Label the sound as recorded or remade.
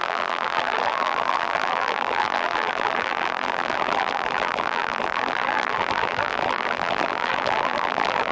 remade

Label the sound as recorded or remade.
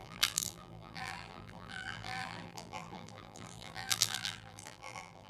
remade